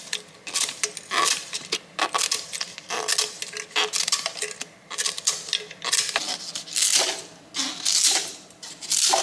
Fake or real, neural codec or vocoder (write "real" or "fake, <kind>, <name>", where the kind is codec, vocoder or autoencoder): real